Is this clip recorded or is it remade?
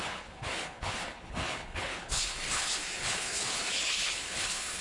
remade